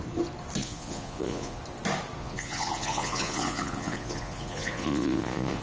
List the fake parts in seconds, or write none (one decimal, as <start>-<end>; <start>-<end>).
0.6-1.6; 2.2-5.6

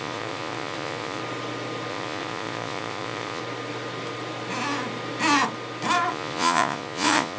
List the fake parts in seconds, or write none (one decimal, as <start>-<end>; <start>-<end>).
0.0-1.2; 1.9-3.4; 6.1-7.4

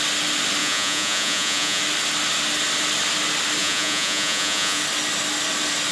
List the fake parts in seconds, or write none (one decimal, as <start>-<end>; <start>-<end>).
0.6-1.8; 3.6-4.8

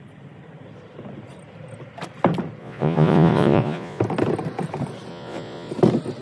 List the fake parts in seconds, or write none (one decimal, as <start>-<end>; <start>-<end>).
2.6-4.0; 5.1-5.7

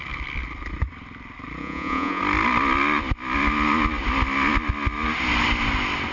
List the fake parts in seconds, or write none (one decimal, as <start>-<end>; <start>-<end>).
1.6-2.2

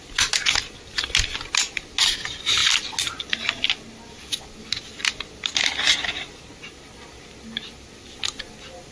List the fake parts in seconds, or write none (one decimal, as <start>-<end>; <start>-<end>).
none

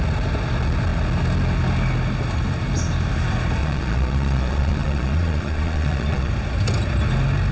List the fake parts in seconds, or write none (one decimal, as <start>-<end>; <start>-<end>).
3.6-6.3